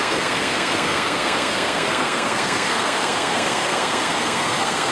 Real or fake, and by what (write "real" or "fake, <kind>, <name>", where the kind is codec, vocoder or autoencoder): fake, codec, SNAC